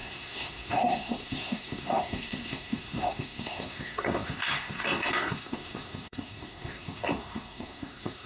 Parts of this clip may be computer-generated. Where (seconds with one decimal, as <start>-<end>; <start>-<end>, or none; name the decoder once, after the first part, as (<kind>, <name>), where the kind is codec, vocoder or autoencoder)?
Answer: 0.0-8.3 (codec, SNAC)